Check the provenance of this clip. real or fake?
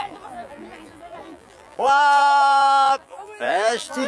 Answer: fake